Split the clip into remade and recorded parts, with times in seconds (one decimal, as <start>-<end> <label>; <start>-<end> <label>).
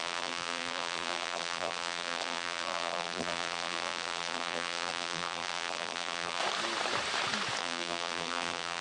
0.0-6.4 remade; 6.4-7.6 recorded; 7.6-8.8 remade